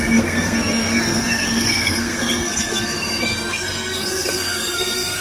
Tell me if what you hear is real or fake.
fake